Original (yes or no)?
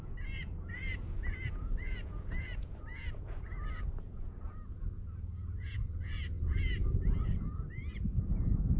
no